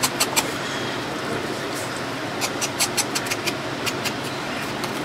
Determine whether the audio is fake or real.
real